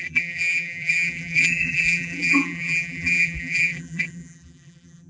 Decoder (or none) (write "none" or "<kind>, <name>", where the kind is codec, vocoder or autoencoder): vocoder, BigVGAN v2